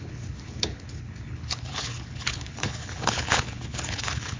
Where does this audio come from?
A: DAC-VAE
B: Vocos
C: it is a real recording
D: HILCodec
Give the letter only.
D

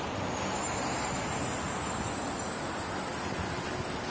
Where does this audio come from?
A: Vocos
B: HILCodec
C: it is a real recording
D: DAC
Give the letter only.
C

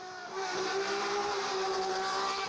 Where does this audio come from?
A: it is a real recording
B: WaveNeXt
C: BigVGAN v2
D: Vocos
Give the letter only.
C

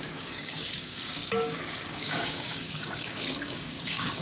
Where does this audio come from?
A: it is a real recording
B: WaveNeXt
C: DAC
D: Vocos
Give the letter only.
C